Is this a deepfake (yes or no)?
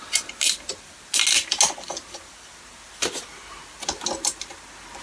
no